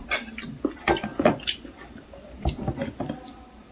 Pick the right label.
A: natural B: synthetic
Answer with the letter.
A